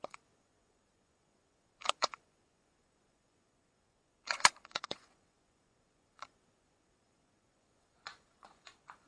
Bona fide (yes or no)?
no